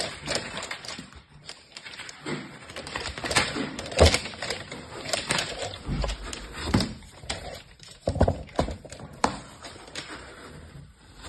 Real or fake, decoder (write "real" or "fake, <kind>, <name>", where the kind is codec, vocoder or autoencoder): fake, vocoder, BigVGAN v2